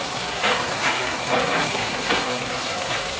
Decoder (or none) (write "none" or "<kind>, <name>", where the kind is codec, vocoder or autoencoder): codec, SNAC